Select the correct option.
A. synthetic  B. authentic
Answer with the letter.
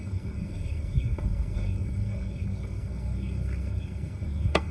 A